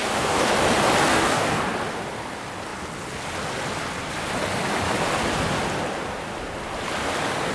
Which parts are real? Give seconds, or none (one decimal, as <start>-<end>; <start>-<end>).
0.5-1.1; 1.6-7.5